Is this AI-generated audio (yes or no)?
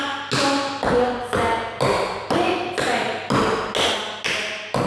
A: no